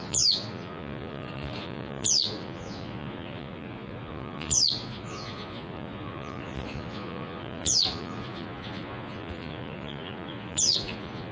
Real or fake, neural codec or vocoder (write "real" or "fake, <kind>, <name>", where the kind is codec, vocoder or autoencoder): fake, vocoder, Vocos